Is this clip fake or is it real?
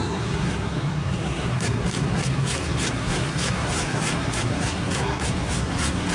fake